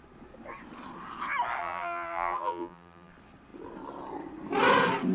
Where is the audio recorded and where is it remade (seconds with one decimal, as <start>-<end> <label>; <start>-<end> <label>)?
0.0-1.6 recorded; 1.6-3.1 remade; 3.1-5.1 recorded